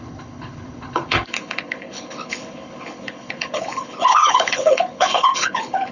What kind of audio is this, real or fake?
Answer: fake